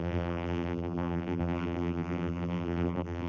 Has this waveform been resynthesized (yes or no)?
yes